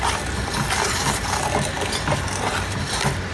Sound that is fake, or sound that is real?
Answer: real